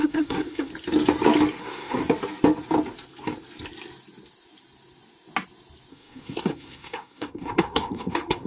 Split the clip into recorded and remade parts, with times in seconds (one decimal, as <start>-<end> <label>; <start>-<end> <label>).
0.0-0.7 remade; 0.7-1.6 recorded; 1.6-2.0 remade; 2.0-5.9 recorded; 5.9-8.5 remade